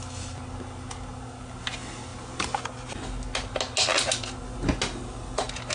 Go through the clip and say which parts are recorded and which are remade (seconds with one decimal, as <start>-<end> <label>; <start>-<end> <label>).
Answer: 0.0-5.7 recorded